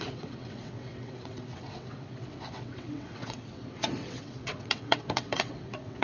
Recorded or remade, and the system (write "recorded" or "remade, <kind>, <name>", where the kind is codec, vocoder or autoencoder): remade, vocoder, WaveNeXt